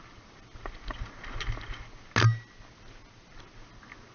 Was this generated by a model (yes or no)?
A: no